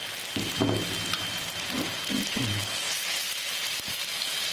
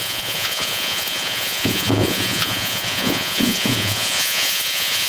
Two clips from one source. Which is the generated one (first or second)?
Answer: second